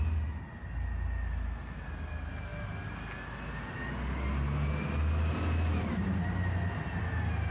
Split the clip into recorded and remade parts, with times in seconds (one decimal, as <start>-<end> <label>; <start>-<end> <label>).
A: 0.0-7.5 recorded